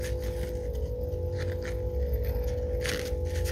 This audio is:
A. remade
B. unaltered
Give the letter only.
B